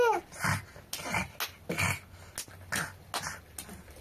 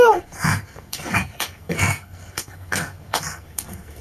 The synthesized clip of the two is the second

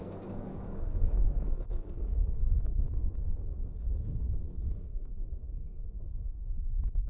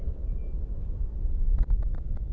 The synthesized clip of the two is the first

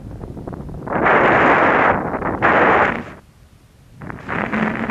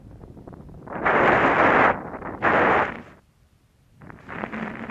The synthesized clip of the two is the second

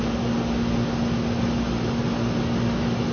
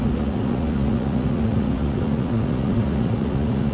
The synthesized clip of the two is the second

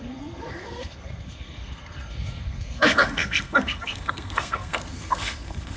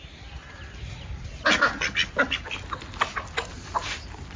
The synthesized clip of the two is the first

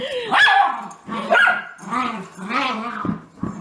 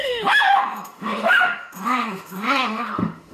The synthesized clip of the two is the second